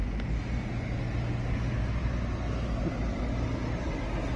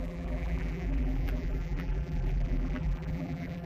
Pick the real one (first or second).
first